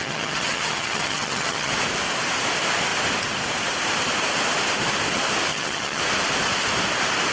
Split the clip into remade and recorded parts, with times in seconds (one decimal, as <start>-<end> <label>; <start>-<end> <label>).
0.0-1.7 remade; 1.7-5.5 recorded; 5.5-6.0 remade; 6.0-7.3 recorded